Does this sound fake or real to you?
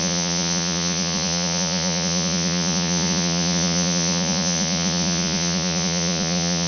fake